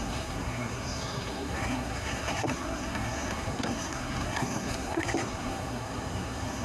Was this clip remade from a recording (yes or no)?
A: yes